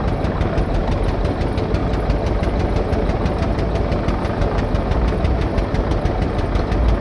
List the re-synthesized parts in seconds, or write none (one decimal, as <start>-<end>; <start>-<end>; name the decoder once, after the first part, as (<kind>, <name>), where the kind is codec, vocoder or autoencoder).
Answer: none